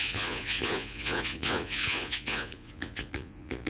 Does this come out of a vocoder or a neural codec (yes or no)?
yes